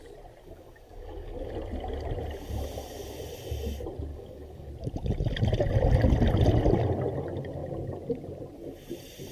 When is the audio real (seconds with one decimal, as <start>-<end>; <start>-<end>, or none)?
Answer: 0.0-0.4; 1.5-4.1; 4.7-9.3

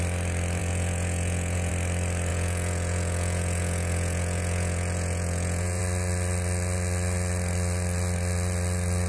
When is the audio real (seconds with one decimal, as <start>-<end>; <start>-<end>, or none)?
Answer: 0.0-0.6; 1.7-2.3; 5.8-9.1